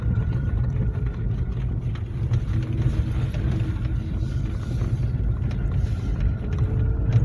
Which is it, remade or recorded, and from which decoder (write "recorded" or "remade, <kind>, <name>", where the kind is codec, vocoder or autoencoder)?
recorded